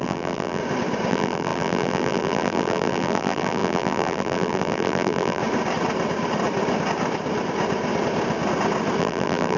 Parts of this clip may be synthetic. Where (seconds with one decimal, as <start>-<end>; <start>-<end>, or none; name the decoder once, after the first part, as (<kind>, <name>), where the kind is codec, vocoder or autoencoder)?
0.0-0.6 (vocoder, BigVGAN v2); 1.1-5.4; 9.0-9.6